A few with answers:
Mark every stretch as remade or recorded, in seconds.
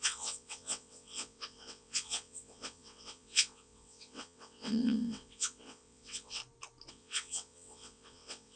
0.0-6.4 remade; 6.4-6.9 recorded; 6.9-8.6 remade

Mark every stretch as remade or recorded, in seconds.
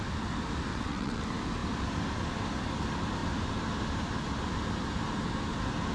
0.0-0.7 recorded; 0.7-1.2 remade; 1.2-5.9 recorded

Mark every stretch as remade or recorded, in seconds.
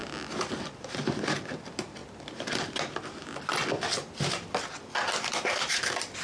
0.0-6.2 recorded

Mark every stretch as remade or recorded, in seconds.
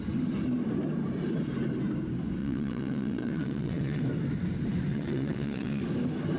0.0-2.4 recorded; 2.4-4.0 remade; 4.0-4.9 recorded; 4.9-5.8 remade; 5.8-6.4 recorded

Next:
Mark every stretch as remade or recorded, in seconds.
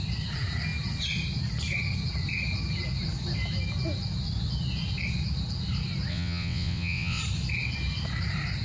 0.0-6.1 recorded; 6.1-7.2 remade; 7.2-8.6 recorded